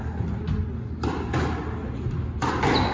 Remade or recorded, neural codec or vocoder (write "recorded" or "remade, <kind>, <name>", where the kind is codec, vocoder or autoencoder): recorded